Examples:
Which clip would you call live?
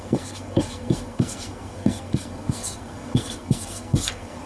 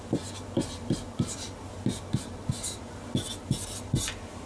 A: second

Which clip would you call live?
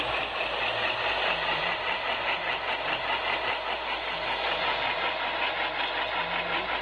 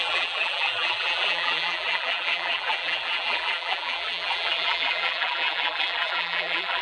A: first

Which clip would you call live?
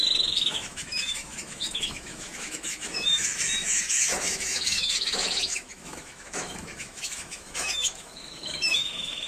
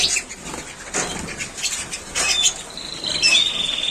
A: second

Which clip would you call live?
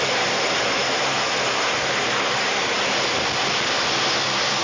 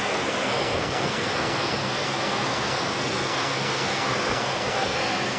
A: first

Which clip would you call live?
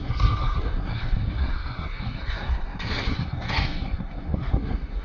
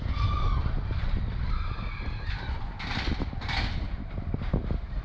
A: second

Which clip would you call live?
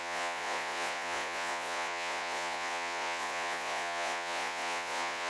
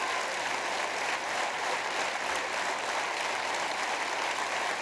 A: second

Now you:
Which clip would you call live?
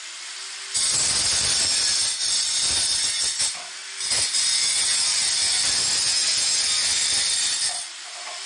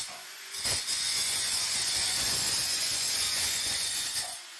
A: first